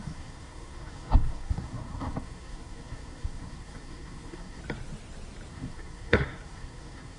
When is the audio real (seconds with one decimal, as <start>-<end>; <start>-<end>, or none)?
4.6-5.5